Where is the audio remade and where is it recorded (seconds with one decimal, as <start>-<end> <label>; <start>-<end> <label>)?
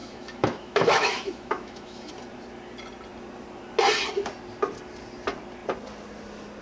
0.0-2.1 remade; 2.1-6.6 recorded